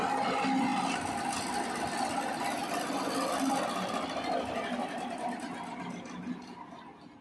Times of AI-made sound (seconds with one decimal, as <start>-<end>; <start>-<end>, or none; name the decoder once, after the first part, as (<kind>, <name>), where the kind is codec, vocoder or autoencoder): none